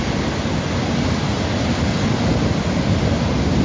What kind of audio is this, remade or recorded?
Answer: recorded